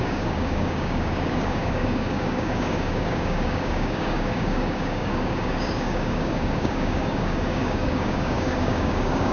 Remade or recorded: remade